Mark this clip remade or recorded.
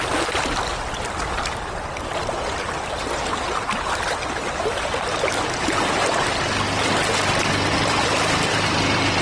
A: recorded